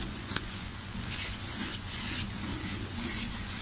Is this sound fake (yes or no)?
yes